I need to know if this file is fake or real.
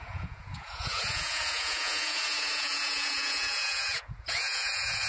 fake